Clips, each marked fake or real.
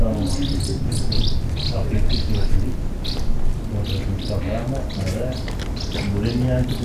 real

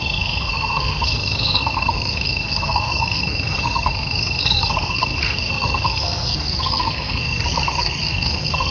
fake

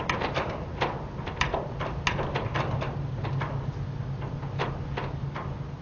real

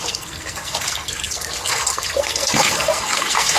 fake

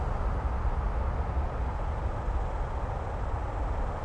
real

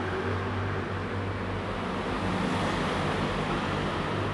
real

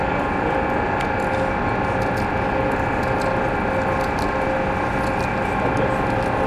real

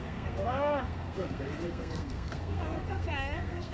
fake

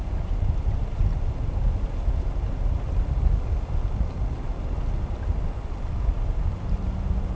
real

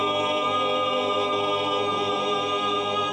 real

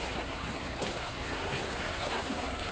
fake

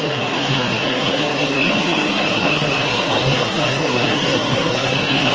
fake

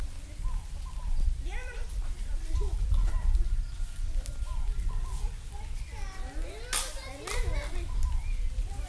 real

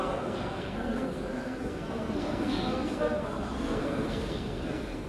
fake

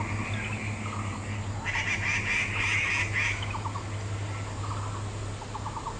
real